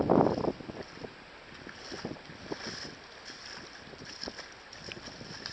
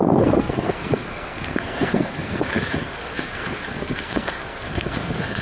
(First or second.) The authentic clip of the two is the first